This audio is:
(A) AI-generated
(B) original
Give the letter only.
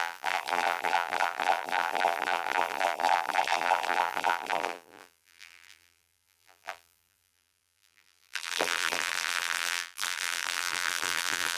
A